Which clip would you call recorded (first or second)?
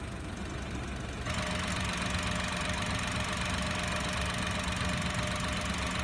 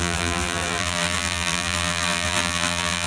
first